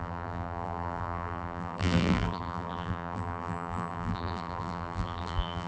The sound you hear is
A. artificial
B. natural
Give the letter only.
A